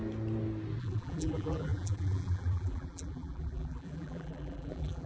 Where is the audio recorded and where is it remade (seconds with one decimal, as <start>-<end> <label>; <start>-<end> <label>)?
0.0-0.8 recorded; 0.8-5.1 remade

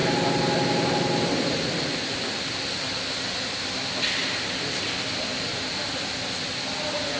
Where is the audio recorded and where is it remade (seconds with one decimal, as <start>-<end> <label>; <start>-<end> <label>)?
0.0-7.2 recorded

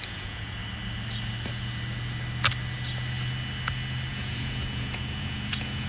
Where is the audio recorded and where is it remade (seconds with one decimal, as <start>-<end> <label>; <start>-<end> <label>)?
0.0-0.6 remade; 0.6-4.1 recorded; 4.1-5.9 remade

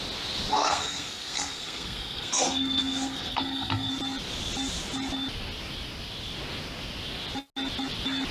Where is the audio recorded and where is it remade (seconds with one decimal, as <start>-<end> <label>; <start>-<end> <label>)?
0.0-0.5 recorded; 0.5-3.9 remade; 3.9-8.3 recorded